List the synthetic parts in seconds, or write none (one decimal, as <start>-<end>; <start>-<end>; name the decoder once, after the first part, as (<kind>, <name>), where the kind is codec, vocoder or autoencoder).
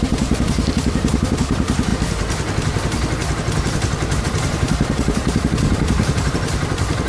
0.0-1.9 (vocoder, BigVGAN v2); 4.2-7.1